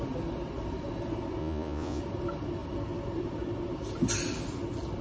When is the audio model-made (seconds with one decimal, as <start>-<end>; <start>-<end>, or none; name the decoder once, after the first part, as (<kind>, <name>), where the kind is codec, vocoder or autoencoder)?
1.4-2.0 (vocoder, Vocos)